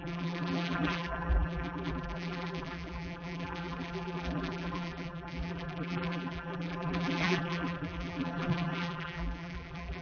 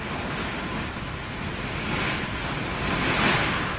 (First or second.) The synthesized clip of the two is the first